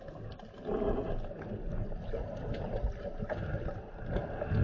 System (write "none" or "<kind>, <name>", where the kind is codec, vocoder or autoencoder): none